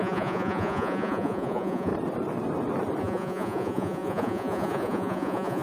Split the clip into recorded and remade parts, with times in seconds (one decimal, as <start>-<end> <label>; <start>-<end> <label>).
0.0-1.9 remade; 1.9-3.0 recorded; 3.0-5.6 remade